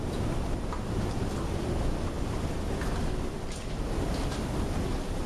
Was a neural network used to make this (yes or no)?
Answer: no